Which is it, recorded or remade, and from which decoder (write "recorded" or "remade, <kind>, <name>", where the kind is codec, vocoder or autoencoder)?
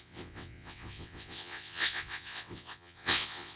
remade, vocoder, WaveNeXt